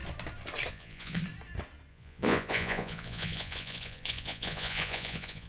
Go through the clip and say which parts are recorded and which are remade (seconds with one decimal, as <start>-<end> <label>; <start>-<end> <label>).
0.0-0.7 recorded; 0.7-1.2 remade; 1.2-1.9 recorded; 1.9-5.5 remade